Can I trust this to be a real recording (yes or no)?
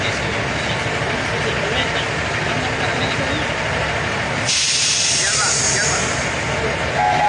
yes